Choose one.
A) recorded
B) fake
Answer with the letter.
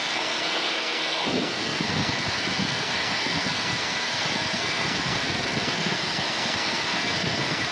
B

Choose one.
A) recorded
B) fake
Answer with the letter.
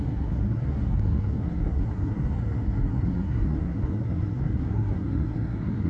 B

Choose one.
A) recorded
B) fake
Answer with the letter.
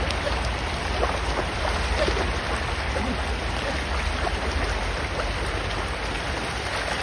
A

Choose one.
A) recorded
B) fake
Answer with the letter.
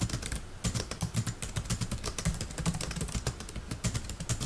A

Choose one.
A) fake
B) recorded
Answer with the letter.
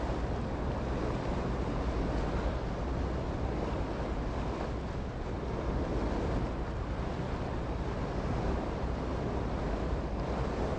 B